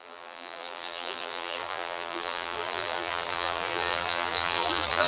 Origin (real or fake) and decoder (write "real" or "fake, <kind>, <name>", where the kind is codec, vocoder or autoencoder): fake, vocoder, BigVGAN v2